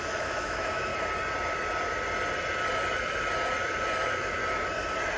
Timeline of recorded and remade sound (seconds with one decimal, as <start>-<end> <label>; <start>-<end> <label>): 0.0-0.9 remade; 0.9-4.0 recorded; 4.0-4.4 remade; 4.4-5.2 recorded